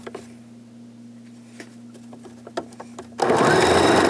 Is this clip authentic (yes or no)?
yes